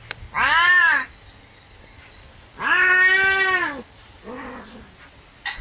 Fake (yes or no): no